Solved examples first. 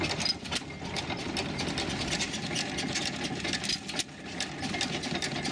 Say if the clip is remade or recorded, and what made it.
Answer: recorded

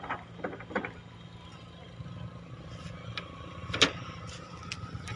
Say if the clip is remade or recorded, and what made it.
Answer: recorded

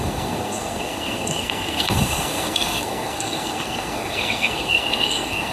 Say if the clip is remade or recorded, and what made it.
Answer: remade, codec, SNAC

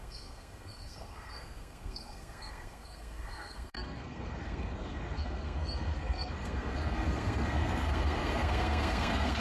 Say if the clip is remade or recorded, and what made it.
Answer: remade, codec, SNAC